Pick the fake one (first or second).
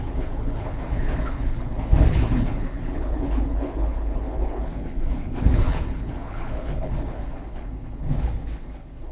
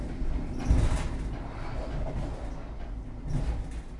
first